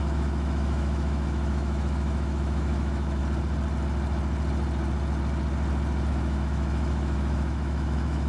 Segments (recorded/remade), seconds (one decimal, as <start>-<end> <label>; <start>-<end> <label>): 0.0-3.2 remade; 3.2-6.1 recorded; 6.1-8.3 remade